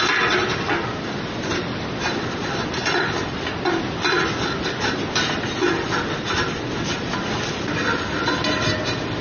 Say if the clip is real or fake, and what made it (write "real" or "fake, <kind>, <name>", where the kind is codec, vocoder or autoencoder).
real